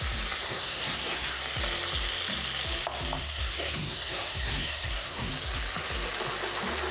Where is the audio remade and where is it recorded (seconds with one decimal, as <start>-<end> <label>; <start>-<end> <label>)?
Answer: 0.0-0.4 recorded; 0.4-1.4 remade; 1.4-3.2 recorded; 3.2-5.3 remade; 5.3-6.9 recorded